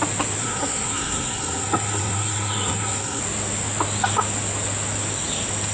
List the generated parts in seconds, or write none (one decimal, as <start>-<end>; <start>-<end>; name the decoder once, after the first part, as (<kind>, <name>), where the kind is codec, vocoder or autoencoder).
0.4-3.2 (codec, SNAC)